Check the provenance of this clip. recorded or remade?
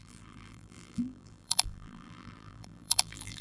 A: remade